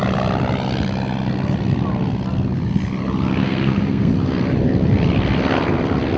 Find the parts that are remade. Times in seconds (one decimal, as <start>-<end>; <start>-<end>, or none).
3.4-4.1